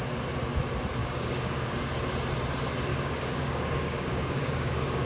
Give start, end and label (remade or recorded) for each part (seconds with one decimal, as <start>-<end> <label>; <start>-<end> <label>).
0.0-1.0 recorded; 1.0-1.8 remade; 1.8-2.9 recorded; 2.9-5.1 remade